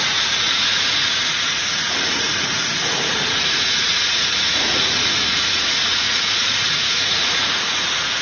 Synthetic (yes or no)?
yes